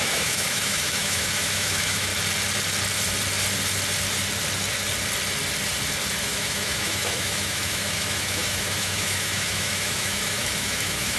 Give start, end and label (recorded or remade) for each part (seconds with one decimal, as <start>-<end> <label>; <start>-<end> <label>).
0.0-2.1 remade; 2.1-6.2 recorded; 6.2-11.2 remade